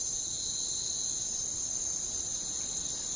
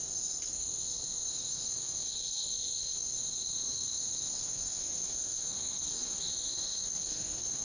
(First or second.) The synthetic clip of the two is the second